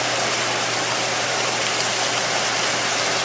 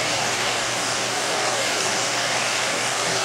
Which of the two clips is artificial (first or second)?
second